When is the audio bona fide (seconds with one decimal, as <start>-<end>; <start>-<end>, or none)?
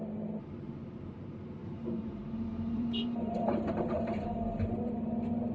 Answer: 0.0-1.6; 4.9-5.5